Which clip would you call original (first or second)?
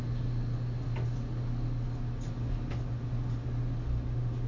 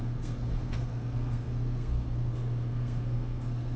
first